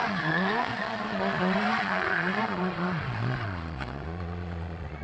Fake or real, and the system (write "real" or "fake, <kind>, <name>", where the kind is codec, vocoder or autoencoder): fake, vocoder, Vocos